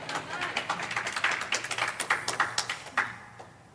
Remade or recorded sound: recorded